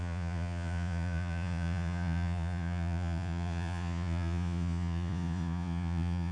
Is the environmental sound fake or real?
fake